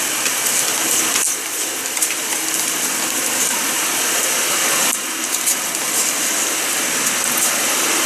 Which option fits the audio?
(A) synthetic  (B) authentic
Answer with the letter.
B